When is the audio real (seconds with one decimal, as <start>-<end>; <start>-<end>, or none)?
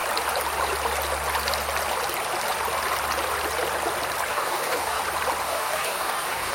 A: 0.0-4.3; 5.0-5.4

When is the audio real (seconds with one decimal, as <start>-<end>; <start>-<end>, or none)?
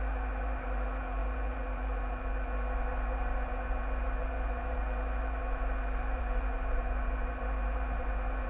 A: none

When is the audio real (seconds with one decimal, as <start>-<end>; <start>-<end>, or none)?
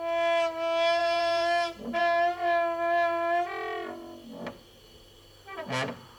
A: 0.0-1.0; 2.0-6.2